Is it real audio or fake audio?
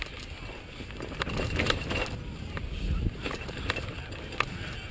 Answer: real